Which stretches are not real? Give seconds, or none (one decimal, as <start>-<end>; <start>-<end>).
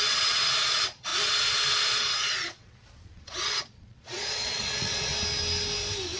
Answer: 0.0-5.1